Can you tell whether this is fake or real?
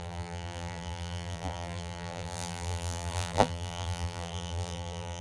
fake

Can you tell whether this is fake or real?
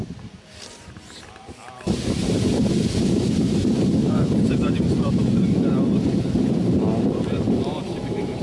fake